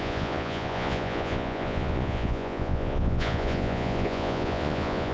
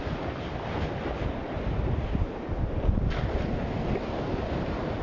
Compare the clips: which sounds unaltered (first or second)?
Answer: second